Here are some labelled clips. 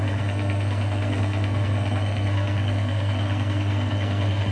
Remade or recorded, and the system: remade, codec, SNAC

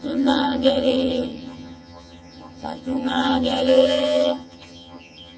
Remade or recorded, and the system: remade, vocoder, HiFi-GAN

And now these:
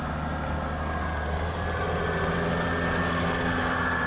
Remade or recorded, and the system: recorded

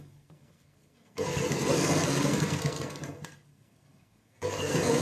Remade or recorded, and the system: remade, codec, SNAC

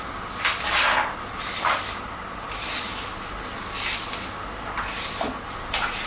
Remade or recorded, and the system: recorded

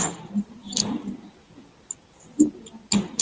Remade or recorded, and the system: recorded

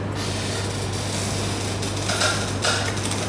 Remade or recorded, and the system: recorded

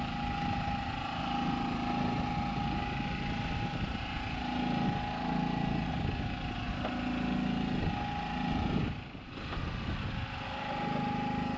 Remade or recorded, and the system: recorded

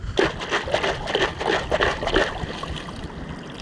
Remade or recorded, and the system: recorded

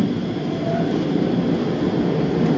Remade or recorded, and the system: recorded